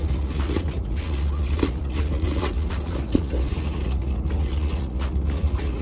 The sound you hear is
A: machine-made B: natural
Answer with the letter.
A